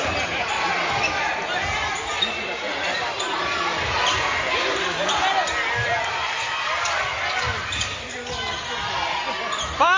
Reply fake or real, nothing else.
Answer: real